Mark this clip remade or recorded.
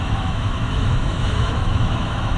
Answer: remade